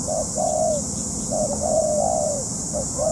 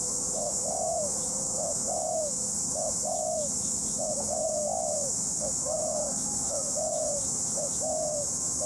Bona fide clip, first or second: first